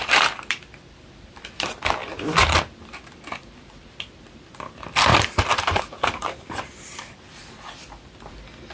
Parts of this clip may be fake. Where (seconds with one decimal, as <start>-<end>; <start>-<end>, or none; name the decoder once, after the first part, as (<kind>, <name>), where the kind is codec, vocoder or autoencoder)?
0.0-2.0 (vocoder, BigVGAN v2); 3.6-8.7